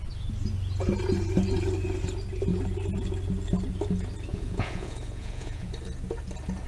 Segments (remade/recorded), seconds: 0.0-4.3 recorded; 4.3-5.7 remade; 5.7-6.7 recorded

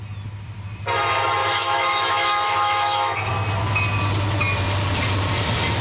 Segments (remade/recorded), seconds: 0.0-1.4 recorded; 1.4-3.3 remade; 3.3-5.8 recorded

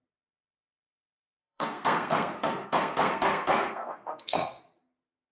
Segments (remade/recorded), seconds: 0.0-1.4 recorded; 1.4-4.6 remade; 4.6-5.3 recorded

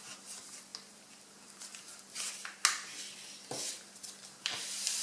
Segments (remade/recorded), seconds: 0.0-5.0 recorded

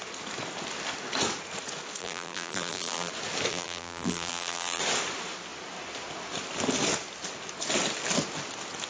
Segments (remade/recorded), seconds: 0.0-2.0 recorded; 2.0-3.1 remade; 3.1-3.5 recorded; 3.5-4.8 remade; 4.8-8.9 recorded